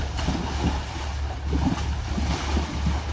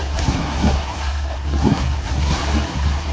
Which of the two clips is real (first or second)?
first